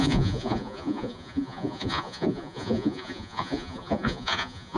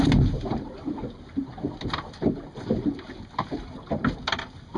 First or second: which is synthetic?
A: first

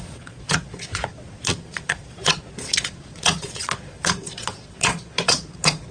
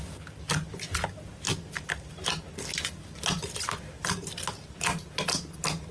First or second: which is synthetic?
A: first